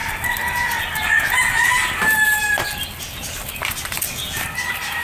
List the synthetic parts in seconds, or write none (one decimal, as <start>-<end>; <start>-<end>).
none